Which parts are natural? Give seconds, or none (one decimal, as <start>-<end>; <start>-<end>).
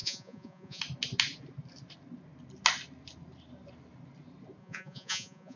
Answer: 0.8-4.6